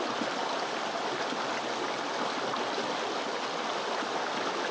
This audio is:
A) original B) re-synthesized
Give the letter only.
A